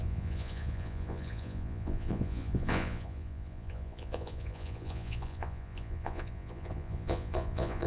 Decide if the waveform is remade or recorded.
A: remade